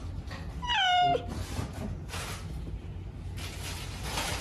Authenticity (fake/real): real